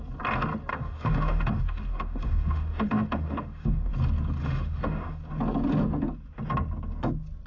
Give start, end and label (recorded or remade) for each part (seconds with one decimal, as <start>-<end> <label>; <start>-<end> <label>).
0.0-0.7 recorded; 0.7-3.9 remade; 3.9-4.4 recorded; 4.4-5.2 remade; 5.2-7.5 recorded